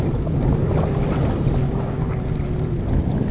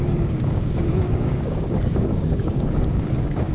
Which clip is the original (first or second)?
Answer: first